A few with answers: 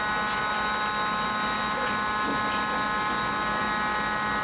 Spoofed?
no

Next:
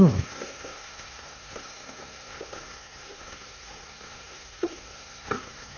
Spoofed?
yes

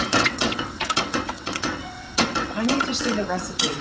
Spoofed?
yes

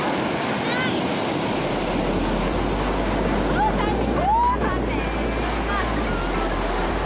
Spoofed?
no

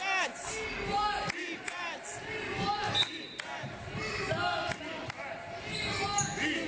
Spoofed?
no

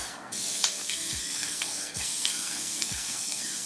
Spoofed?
yes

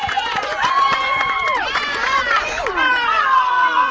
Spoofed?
yes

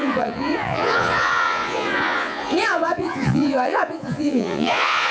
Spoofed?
yes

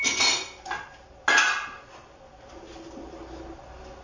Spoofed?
no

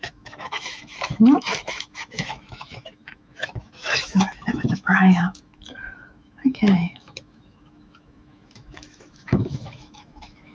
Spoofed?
yes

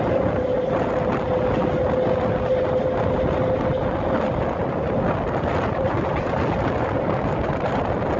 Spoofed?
no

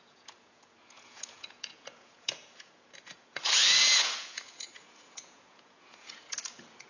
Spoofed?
yes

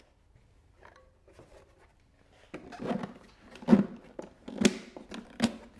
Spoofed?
no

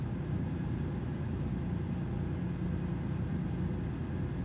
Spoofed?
no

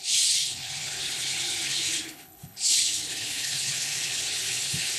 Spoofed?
yes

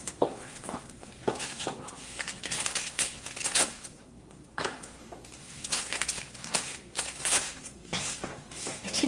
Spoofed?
yes